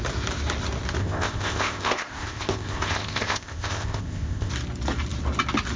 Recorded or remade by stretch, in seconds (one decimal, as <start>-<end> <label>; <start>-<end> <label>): 0.0-1.0 recorded; 1.0-4.5 remade; 4.5-5.8 recorded